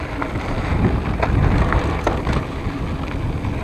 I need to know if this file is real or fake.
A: real